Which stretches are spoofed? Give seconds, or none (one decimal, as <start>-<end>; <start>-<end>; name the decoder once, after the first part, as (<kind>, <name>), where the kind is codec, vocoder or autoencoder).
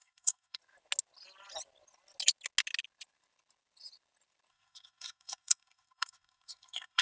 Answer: 0.0-0.6 (codec, SNAC); 4.5-7.0